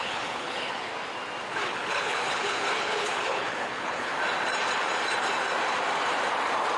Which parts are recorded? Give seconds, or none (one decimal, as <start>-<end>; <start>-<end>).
0.9-1.5; 4.1-6.8